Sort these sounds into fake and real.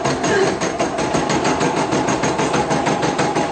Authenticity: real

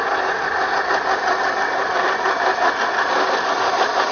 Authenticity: real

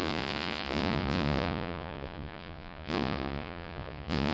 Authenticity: fake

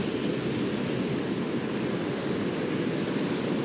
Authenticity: real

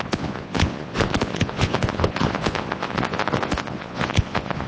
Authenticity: fake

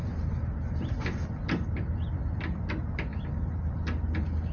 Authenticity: real